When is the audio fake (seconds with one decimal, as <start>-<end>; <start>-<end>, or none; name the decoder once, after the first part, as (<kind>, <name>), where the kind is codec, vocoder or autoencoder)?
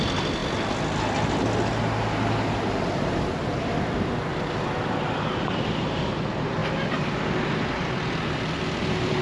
none